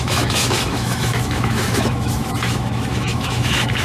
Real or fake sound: fake